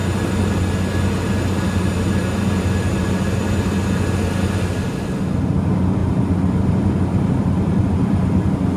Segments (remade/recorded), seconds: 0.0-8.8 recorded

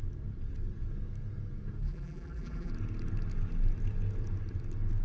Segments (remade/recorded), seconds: 0.0-1.8 recorded; 1.8-2.7 remade; 2.7-5.0 recorded

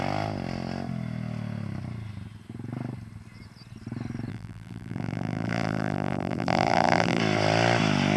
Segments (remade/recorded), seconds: 0.0-4.3 recorded; 4.3-7.2 remade; 7.2-8.2 recorded

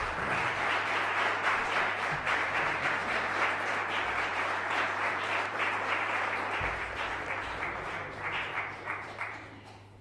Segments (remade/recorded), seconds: 0.0-10.0 remade